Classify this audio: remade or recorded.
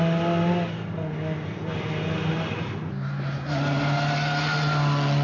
recorded